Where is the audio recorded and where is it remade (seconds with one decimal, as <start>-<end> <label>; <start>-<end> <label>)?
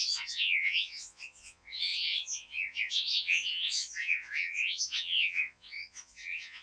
0.0-6.6 remade